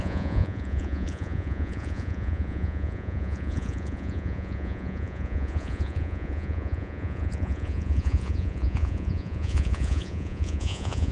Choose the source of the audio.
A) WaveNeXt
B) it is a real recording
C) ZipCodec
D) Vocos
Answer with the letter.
D